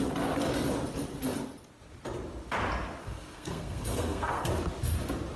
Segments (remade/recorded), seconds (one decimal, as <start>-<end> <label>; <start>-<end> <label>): 0.0-3.0 recorded; 3.0-4.5 remade; 4.5-5.4 recorded